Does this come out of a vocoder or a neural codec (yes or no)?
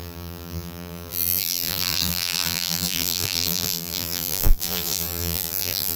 yes